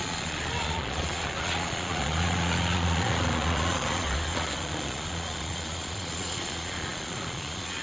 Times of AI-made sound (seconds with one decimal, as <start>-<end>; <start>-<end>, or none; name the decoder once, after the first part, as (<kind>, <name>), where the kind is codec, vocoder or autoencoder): 0.0-7.8 (vocoder, Vocos)